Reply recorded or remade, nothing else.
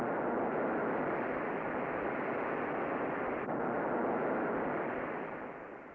recorded